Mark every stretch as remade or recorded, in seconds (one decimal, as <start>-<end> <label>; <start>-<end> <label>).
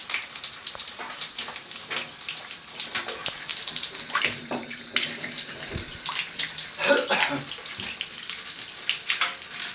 0.0-1.4 remade; 1.4-3.5 recorded; 3.5-6.9 remade; 6.9-9.7 recorded